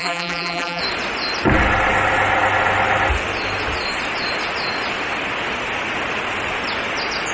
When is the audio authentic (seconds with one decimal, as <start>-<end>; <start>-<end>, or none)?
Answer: 0.8-7.3